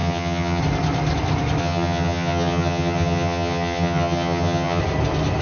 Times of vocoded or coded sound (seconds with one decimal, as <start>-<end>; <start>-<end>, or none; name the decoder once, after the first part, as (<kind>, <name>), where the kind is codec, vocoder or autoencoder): 0.0-0.6 (vocoder, HiFi-GAN); 1.6-4.8